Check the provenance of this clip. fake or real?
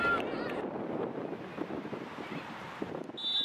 real